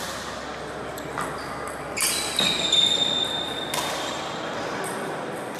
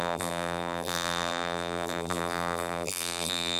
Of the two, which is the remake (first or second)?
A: second